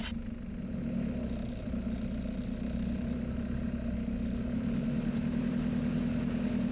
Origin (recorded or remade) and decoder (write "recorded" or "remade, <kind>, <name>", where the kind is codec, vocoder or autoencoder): recorded